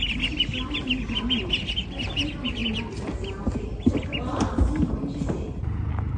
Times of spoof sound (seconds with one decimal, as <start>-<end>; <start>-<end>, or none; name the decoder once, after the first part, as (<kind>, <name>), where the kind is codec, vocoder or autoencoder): none

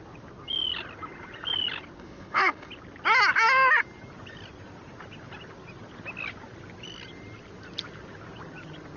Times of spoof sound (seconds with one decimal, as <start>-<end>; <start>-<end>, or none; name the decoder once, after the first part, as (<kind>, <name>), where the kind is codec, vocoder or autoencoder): 2.0-2.7 (codec, HILCodec)

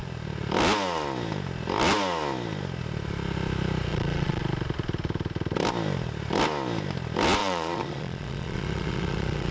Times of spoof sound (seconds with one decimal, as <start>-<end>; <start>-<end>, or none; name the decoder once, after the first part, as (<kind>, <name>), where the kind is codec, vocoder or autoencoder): 3.9-4.4 (vocoder, Vocos); 7.4-9.5

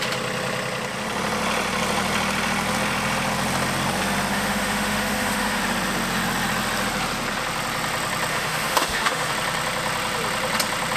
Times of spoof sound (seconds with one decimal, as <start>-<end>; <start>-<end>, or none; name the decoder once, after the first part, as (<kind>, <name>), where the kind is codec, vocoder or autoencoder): 4.3-5.6 (autoencoder, DAC-VAE); 8.3-9.3

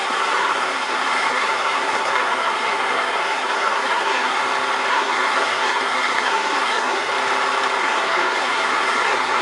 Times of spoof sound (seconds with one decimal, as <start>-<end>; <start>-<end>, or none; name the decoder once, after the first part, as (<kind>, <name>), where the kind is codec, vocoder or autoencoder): 0.0-4.4 (codec, SNAC); 4.9-7.1; 7.8-9.4

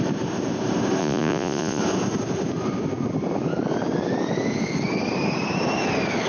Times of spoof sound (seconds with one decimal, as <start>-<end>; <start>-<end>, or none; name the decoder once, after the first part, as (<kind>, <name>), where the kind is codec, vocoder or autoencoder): 1.0-1.8 (vocoder, Vocos)

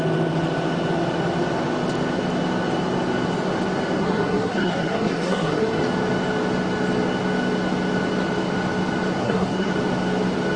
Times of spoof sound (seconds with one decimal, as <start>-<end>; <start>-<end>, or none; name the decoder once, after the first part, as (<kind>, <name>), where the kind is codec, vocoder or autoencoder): 4.0-5.8 (codec, SNAC); 9.2-9.7